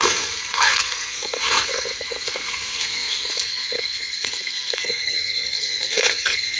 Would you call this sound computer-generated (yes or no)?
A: yes